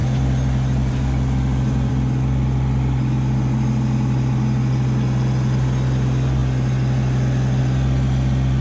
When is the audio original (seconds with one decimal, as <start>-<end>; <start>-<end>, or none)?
0.0-8.6